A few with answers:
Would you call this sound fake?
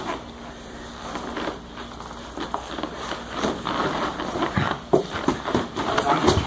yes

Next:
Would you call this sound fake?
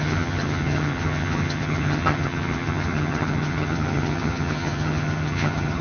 yes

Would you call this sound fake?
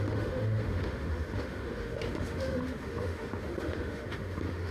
yes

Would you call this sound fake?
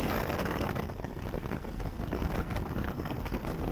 yes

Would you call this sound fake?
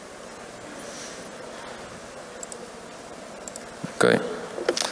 no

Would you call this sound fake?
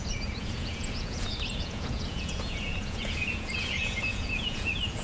yes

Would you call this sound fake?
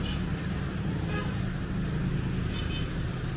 no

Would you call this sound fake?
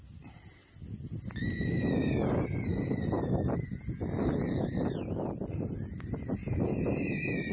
no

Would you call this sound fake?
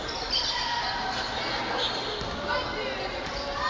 no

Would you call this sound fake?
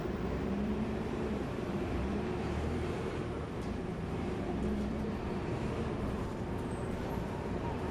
yes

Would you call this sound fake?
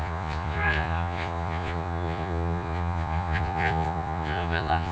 yes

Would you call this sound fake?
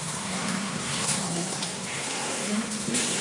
yes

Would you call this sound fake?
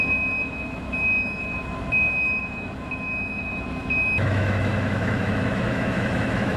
yes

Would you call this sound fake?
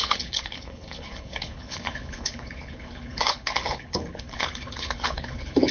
yes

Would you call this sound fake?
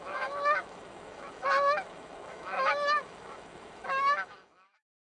yes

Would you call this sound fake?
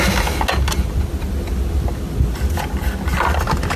no